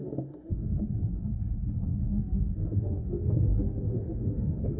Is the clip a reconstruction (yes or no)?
yes